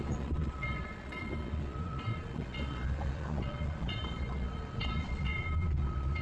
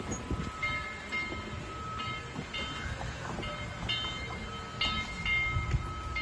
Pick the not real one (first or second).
first